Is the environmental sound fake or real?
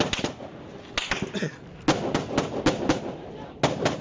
real